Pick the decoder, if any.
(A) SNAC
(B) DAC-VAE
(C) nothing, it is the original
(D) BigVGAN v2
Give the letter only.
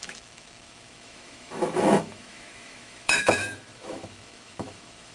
B